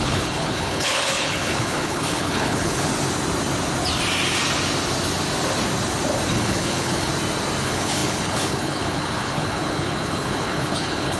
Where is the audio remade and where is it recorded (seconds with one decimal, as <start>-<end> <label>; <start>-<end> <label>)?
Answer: 0.0-2.9 remade; 2.9-6.3 recorded; 6.3-7.1 remade; 7.1-7.6 recorded; 7.6-11.2 remade